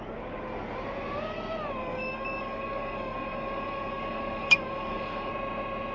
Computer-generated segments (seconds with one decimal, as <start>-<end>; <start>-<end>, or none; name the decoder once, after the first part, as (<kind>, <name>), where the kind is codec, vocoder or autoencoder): 1.8-5.3 (codec, DAC)